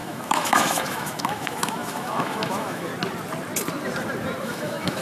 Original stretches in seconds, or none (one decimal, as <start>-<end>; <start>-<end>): 2.9-4.4